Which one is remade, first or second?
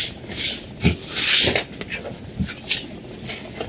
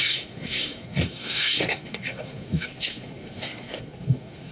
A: second